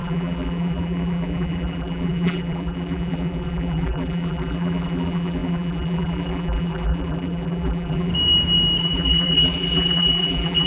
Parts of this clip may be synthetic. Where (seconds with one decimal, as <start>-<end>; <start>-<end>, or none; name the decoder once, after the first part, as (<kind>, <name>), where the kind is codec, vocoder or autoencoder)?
0.0-8.1 (vocoder, BigVGAN v2); 8.8-10.7